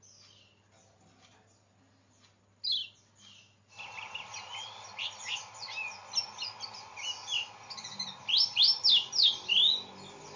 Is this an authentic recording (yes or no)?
yes